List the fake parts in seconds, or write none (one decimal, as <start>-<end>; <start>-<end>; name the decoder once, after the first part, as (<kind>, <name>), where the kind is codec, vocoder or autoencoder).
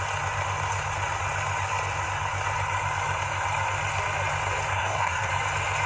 4.7-5.3 (codec, SNAC)